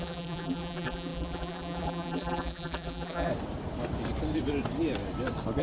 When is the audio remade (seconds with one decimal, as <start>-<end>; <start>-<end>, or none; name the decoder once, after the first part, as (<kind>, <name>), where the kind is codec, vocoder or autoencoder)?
0.0-3.3 (vocoder, BigVGAN v2)

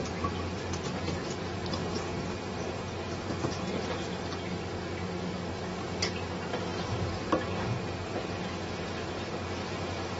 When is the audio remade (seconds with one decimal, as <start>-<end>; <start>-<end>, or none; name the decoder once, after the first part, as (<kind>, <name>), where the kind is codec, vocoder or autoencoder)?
none

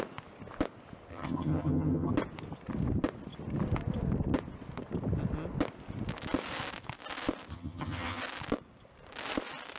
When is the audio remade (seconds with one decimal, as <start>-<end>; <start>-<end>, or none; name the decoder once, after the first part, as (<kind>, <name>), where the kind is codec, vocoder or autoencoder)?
1.1-2.1 (vocoder, HiFi-GAN); 7.5-8.2

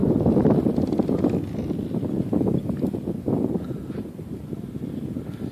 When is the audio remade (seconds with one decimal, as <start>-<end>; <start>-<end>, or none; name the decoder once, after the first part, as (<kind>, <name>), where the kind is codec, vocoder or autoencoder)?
0.0-3.3 (vocoder, BigVGAN v2)

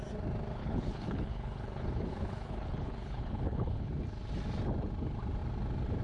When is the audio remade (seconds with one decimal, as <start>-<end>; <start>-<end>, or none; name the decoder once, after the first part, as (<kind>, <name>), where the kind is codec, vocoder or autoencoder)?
0.6-3.9 (codec, HILCodec)

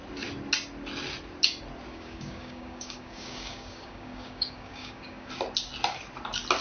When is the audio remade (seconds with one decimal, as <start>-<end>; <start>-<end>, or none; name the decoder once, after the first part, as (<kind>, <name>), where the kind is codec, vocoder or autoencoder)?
1.9-5.3 (codec, DAC)

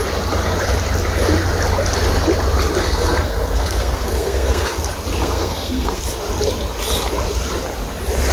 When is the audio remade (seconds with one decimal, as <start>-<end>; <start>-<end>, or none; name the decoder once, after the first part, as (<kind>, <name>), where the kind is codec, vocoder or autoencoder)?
2.8-4.8 (codec, SNAC); 5.2-6.0

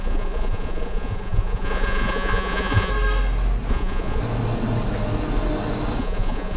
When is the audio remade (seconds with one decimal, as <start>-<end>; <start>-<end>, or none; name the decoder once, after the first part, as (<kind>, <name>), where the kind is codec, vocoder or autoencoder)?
0.0-2.9 (vocoder, Vocos); 3.7-4.2; 6.0-6.6